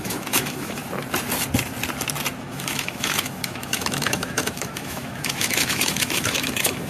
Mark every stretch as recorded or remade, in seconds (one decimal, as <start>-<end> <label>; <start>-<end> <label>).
0.0-0.8 remade; 0.8-2.4 recorded; 2.4-6.9 remade